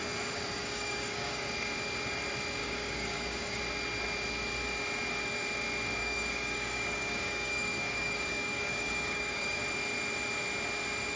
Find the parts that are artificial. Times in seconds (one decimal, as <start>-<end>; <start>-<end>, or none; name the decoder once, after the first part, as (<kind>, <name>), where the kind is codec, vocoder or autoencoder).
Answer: 0.6-1.5 (codec, DAC); 2.6-3.6; 6.0-9.6